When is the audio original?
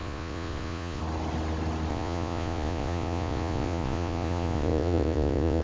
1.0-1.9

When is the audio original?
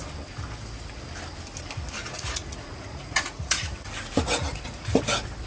0.0-2.0; 3.7-4.5; 5.1-5.5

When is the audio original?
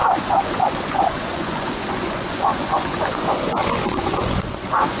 none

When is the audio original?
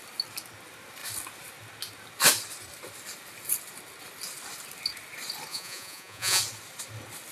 0.0-5.5; 6.4-7.3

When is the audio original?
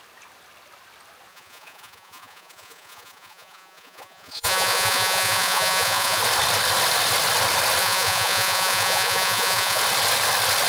0.0-1.3; 6.2-7.8; 9.8-10.7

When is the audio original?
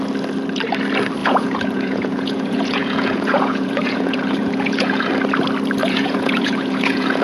0.0-1.2; 5.1-5.8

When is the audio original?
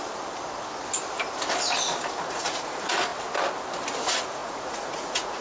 0.0-2.3; 3.1-4.0